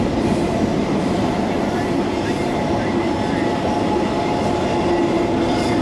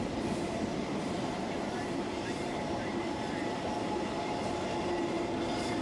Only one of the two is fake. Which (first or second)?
second